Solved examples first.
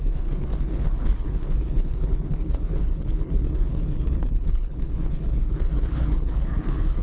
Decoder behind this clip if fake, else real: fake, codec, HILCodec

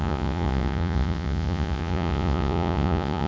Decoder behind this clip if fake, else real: fake, vocoder, Vocos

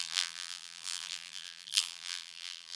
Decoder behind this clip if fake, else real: fake, vocoder, BigVGAN v2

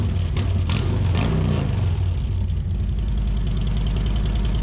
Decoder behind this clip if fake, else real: real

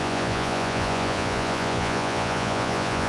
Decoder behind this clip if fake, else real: fake, vocoder, Vocos